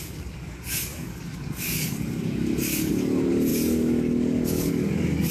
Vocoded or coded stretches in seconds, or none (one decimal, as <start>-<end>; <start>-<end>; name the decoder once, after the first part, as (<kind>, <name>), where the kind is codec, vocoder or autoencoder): 0.0-5.3 (codec, DAC)